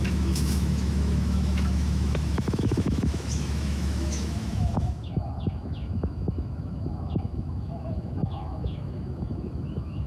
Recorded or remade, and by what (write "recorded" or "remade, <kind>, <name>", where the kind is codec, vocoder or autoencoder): remade, autoencoder, DAC-VAE